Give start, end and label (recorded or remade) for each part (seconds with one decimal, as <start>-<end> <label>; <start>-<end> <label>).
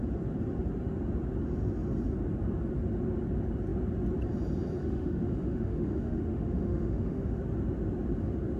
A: 0.0-4.8 recorded; 4.8-7.4 remade; 7.4-8.6 recorded